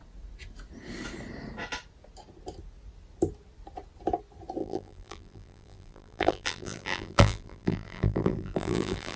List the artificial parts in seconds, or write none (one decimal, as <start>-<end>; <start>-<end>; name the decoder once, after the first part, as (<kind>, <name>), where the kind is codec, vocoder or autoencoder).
4.6-9.2 (vocoder, BigVGAN v2)